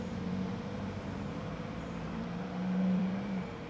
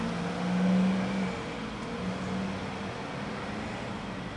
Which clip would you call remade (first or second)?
first